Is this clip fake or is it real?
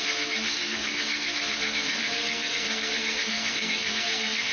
fake